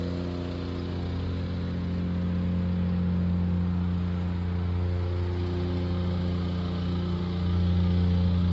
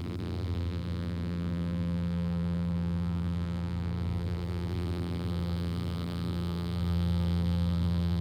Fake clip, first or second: second